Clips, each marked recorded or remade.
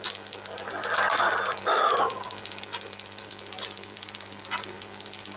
recorded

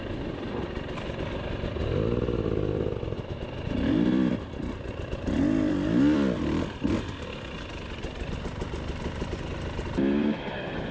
remade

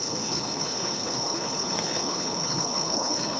remade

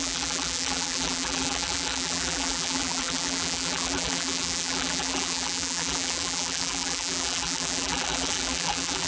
remade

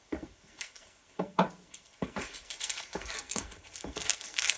remade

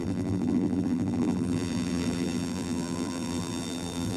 remade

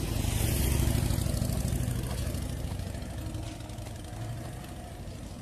recorded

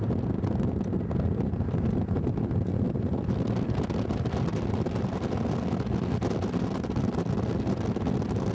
recorded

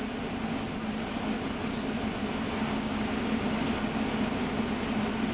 recorded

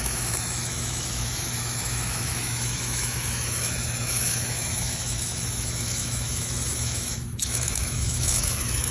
remade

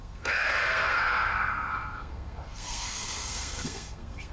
remade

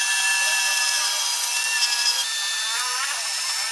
recorded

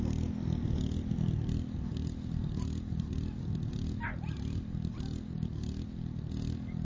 recorded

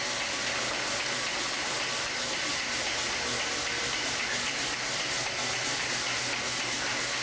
recorded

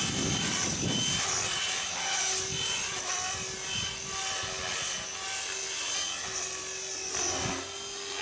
recorded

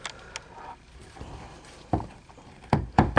recorded